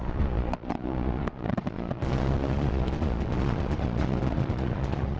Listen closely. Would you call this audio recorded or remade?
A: remade